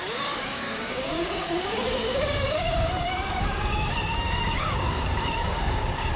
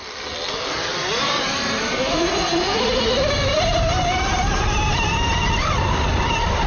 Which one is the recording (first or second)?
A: second